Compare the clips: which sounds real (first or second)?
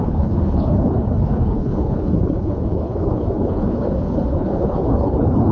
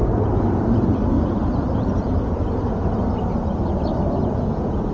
second